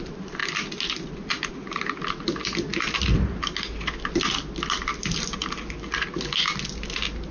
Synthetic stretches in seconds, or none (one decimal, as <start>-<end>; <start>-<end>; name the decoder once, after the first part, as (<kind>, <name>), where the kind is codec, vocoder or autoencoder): none